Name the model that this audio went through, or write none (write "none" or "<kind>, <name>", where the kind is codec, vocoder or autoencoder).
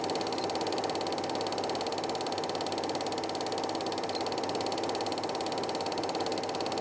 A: none